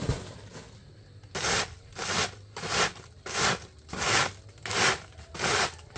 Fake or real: real